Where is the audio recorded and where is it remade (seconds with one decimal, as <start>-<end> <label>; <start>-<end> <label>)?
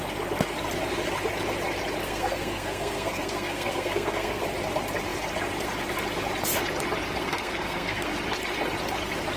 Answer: 0.0-2.0 recorded; 2.0-4.4 remade; 4.4-7.2 recorded; 7.2-8.1 remade; 8.1-9.4 recorded